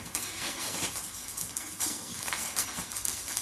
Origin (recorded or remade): remade